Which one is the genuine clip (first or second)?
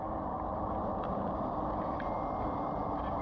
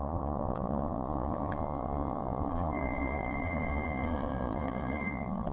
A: first